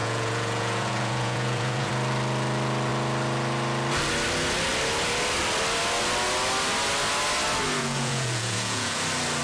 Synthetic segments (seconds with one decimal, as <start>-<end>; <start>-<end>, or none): 0.0-1.9; 7.8-9.0